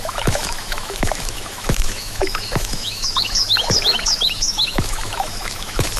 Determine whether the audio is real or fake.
fake